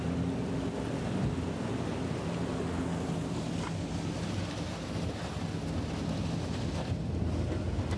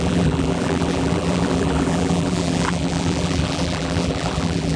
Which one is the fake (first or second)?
second